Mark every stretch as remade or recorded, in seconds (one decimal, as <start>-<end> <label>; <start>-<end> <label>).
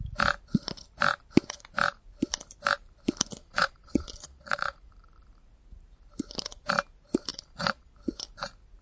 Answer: 0.0-3.4 recorded; 3.4-4.9 remade; 4.9-7.3 recorded; 7.3-7.9 remade; 7.9-8.8 recorded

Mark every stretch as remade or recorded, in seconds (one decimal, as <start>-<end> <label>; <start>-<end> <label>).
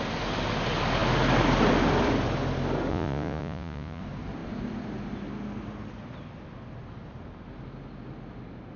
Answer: 0.0-2.9 recorded; 2.9-4.0 remade; 4.0-8.8 recorded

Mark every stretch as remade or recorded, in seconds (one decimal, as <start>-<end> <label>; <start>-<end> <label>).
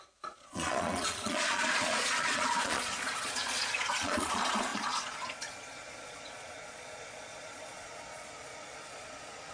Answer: 0.0-9.5 remade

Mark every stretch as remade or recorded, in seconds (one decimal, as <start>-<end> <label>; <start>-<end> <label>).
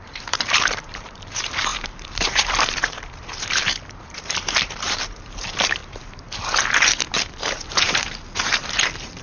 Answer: 0.0-5.8 remade; 5.8-7.7 recorded; 7.7-9.2 remade